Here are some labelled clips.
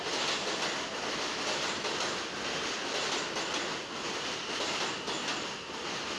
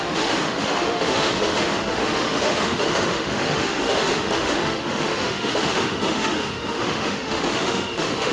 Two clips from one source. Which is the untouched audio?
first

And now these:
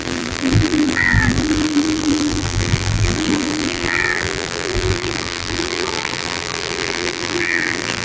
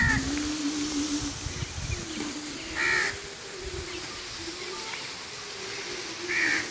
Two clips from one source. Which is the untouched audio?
second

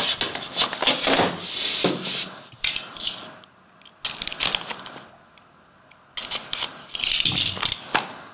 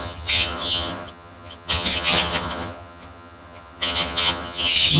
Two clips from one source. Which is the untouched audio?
first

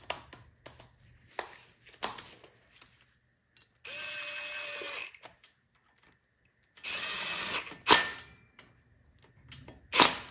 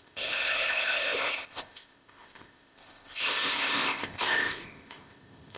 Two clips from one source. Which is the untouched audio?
first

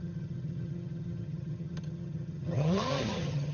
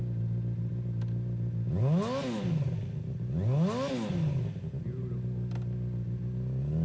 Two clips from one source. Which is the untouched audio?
second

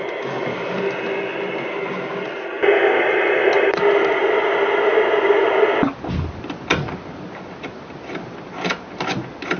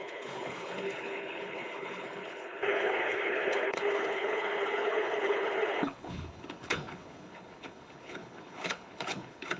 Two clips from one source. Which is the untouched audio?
first